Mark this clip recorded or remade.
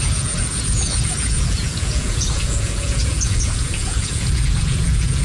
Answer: remade